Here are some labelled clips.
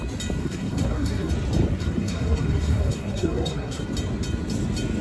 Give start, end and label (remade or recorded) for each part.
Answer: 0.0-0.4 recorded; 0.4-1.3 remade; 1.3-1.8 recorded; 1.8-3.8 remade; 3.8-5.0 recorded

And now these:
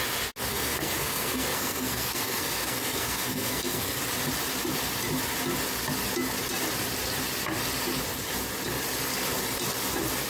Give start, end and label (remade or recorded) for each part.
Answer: 0.0-0.5 recorded; 0.5-4.0 remade; 4.0-10.3 recorded

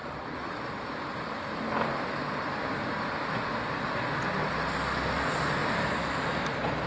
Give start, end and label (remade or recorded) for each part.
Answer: 0.0-6.9 recorded

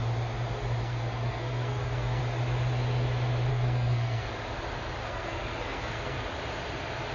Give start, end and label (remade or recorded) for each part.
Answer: 0.0-0.8 recorded; 0.8-2.2 remade; 2.2-3.5 recorded; 3.5-4.3 remade; 4.3-5.0 recorded; 5.0-6.2 remade; 6.2-7.1 recorded

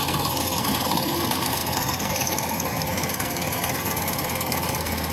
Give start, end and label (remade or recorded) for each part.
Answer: 0.0-5.1 remade

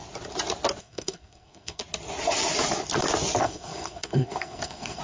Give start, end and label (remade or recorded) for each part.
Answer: 0.0-0.8 recorded; 0.8-1.8 remade; 1.8-3.4 recorded; 3.4-5.0 remade

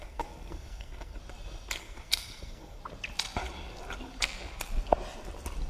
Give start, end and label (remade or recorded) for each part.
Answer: 0.0-1.2 remade; 1.2-1.8 recorded; 1.8-2.8 remade; 2.8-5.7 recorded

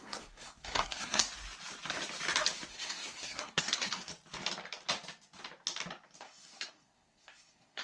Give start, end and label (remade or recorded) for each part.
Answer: 0.0-1.2 remade; 1.2-2.7 recorded; 2.7-4.1 remade; 4.1-6.2 recorded; 6.2-7.8 remade